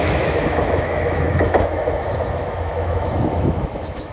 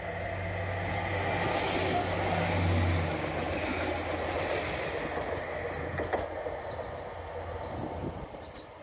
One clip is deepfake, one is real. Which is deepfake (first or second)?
first